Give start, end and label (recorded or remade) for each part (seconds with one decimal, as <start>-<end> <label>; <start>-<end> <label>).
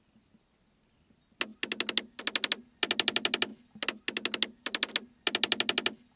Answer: 0.0-6.2 recorded